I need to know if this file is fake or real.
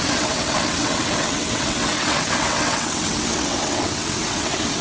fake